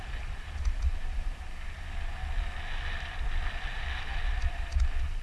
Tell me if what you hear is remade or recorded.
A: recorded